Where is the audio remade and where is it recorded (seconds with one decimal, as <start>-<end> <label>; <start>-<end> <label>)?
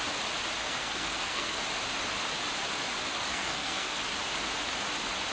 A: 0.0-0.6 recorded; 0.6-1.6 remade; 1.6-3.3 recorded; 3.3-4.0 remade; 4.0-5.3 recorded